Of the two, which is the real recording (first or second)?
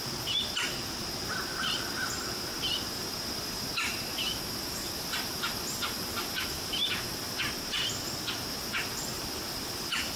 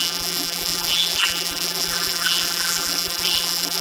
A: first